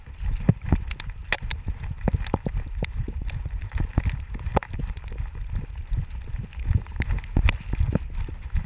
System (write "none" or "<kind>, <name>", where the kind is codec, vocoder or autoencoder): none